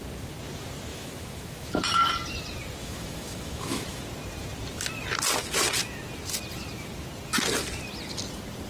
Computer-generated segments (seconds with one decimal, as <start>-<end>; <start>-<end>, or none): 0.9-1.8; 2.8-4.0